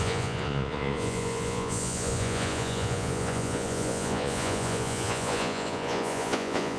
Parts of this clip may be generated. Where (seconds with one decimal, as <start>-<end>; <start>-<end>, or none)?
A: 0.0-6.8